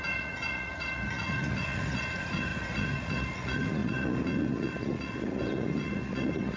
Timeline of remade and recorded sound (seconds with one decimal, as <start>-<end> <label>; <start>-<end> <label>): 0.0-6.6 remade